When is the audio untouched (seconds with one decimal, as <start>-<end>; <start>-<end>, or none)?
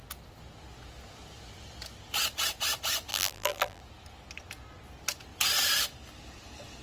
0.0-3.1; 3.8-6.8